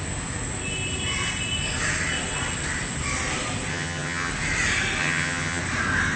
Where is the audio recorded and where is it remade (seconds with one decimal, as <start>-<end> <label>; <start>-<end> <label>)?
0.0-3.7 recorded; 3.7-4.3 remade; 4.3-5.0 recorded; 5.0-5.6 remade; 5.6-6.2 recorded

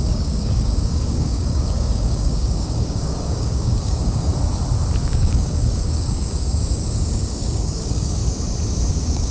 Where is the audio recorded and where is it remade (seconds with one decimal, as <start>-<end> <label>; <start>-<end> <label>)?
0.0-4.3 remade; 4.3-5.0 recorded; 5.0-8.2 remade; 8.2-8.9 recorded; 8.9-9.3 remade

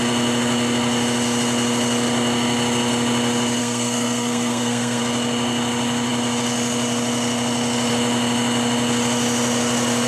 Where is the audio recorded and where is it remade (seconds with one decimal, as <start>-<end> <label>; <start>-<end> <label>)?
0.0-3.6 recorded; 3.6-5.0 remade; 5.0-10.1 recorded